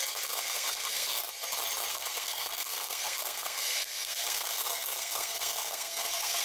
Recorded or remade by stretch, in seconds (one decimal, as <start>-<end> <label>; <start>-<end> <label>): 0.0-1.2 remade; 1.2-1.9 recorded; 1.9-6.4 remade